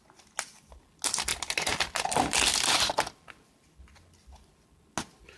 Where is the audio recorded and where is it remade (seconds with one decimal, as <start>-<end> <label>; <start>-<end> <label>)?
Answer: 0.0-5.4 recorded